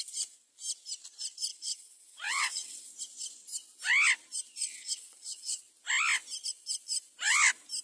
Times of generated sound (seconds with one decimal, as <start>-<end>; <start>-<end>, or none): 1.5-2.9; 4.7-5.6